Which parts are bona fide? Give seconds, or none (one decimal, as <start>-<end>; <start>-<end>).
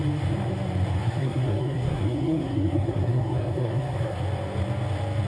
0.0-1.0; 4.2-5.3